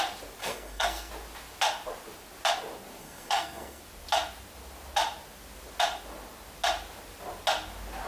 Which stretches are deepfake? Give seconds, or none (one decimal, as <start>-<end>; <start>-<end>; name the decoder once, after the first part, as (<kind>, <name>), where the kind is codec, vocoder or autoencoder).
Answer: 0.4-1.1 (codec, SNAC); 3.0-3.8